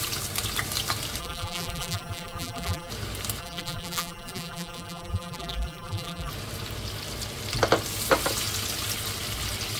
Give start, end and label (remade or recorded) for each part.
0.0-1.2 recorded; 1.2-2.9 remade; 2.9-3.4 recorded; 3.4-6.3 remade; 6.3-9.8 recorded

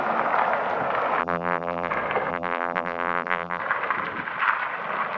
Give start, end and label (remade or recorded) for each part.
0.0-1.2 recorded; 1.2-1.9 remade; 1.9-2.3 recorded; 2.3-3.6 remade; 3.6-5.2 recorded

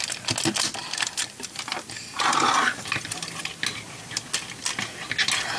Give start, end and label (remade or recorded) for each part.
0.0-0.8 recorded; 0.8-3.4 remade; 3.4-5.6 recorded

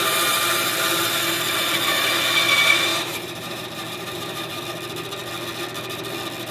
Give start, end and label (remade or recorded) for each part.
0.0-2.9 recorded; 2.9-4.6 remade; 4.6-6.5 recorded

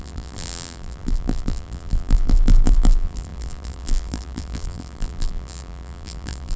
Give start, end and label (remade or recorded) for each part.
0.0-6.6 remade